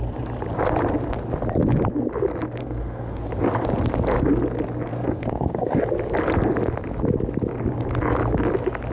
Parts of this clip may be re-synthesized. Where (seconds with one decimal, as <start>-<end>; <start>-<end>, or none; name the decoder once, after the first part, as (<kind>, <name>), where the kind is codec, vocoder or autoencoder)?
2.6-3.3 (codec, SNAC); 4.9-5.8